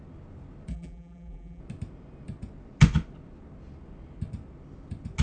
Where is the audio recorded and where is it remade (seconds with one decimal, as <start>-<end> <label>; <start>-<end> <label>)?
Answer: 0.0-0.7 recorded; 0.7-1.6 remade; 1.6-5.2 recorded